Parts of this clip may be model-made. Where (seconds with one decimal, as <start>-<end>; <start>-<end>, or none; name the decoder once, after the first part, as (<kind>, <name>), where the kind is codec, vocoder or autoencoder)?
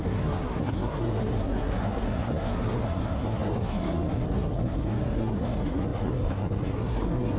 0.0-7.4 (codec, SNAC)